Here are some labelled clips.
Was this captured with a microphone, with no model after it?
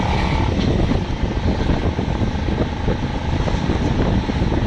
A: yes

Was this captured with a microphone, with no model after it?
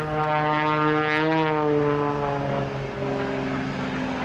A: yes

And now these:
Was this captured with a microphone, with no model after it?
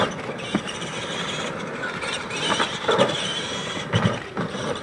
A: no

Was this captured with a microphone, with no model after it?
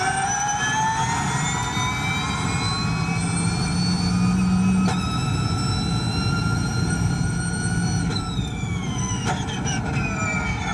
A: yes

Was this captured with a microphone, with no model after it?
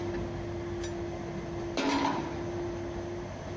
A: yes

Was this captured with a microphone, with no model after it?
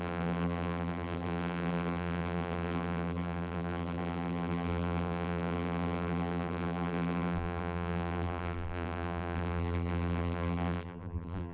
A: no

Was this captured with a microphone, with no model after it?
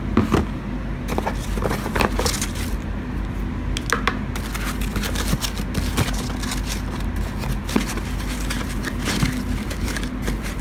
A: yes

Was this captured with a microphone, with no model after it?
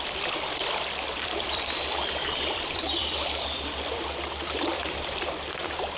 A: no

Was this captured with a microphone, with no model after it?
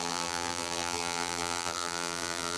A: no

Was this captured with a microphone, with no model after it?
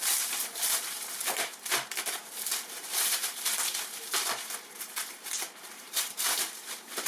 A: no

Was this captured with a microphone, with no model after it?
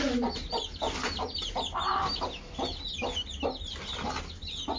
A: yes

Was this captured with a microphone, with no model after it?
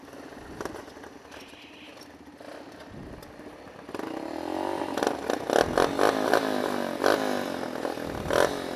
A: yes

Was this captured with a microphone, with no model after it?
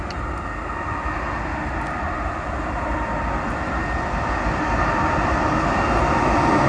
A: yes